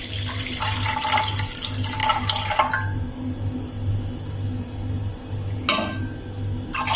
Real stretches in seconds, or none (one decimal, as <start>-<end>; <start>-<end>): 0.0-7.0